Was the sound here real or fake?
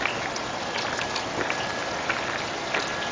real